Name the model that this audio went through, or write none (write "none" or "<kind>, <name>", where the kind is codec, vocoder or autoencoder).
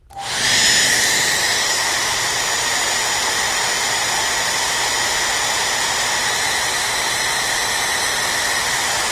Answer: none